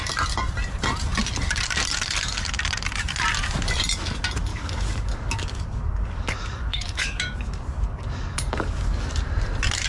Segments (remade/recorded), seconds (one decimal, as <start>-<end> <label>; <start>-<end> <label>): 0.0-4.5 recorded; 4.5-9.1 remade; 9.1-9.9 recorded